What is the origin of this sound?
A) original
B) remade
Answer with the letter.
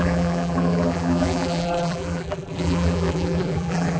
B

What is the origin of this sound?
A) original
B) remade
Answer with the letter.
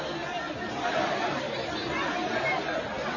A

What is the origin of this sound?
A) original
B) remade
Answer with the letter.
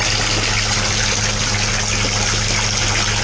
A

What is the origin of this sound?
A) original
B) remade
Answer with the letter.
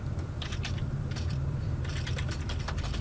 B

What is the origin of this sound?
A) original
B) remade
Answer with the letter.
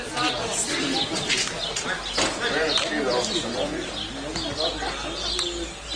A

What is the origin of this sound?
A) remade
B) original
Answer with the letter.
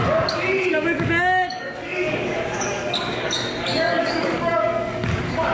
A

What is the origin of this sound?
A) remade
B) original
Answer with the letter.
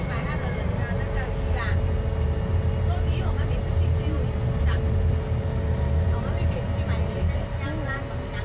B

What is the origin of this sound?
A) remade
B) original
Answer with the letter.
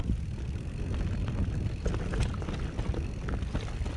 B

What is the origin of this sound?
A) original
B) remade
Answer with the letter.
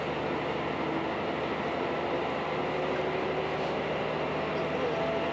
A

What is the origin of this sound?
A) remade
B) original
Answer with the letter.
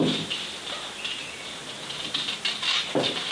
B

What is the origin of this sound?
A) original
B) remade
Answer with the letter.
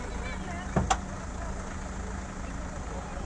A